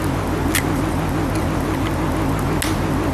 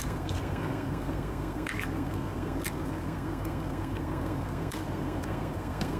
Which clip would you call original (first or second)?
first